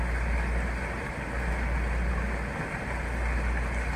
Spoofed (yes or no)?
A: no